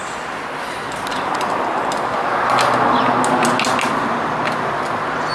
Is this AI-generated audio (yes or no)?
no